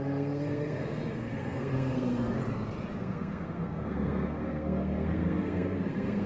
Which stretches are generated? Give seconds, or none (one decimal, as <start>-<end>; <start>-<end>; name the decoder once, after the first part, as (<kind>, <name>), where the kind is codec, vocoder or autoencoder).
0.0-2.4 (codec, SNAC); 3.0-6.3